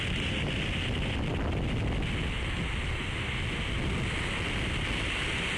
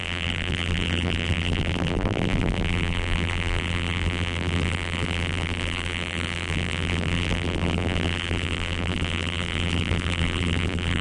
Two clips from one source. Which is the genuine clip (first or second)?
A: first